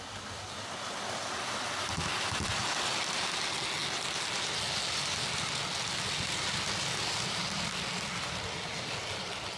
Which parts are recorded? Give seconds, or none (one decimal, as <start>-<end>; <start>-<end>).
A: 0.0-9.6